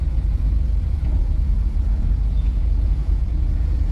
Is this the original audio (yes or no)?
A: no